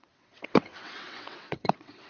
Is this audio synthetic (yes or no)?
yes